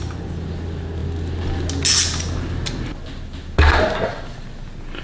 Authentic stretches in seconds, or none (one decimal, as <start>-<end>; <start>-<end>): 0.0-5.0